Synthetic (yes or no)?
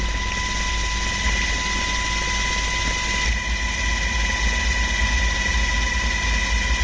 no